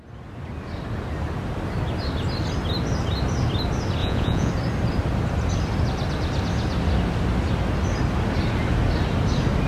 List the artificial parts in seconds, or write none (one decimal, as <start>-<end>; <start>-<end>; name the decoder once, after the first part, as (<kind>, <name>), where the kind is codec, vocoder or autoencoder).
4.0-4.5 (vocoder, Vocos)